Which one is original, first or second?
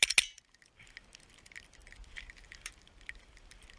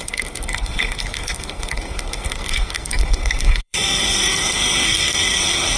first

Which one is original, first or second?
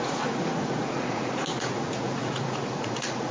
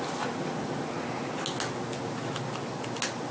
second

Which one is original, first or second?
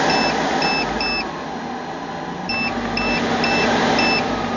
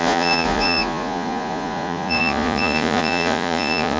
first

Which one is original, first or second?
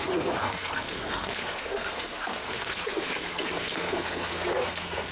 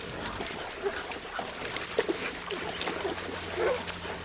second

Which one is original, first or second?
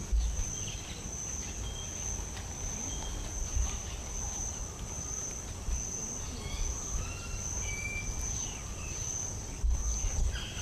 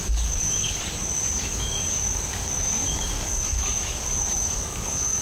first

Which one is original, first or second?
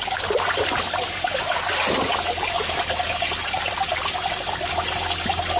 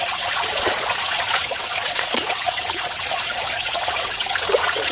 first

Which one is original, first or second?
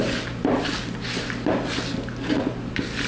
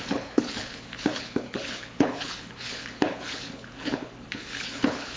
first